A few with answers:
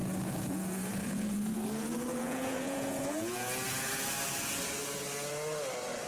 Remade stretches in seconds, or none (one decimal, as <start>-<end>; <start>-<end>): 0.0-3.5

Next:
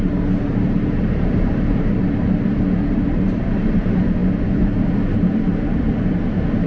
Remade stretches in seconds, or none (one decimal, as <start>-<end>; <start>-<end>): 0.0-6.7

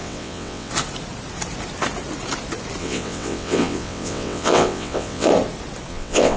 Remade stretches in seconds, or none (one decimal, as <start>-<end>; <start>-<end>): 0.0-0.7; 2.8-5.3; 5.9-6.4

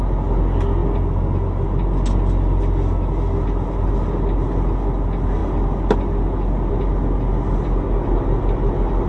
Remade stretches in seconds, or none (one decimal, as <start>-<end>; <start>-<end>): none

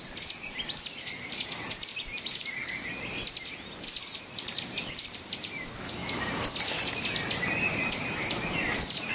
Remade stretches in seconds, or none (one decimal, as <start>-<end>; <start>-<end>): 0.0-2.6; 4.0-6.0; 7.3-9.1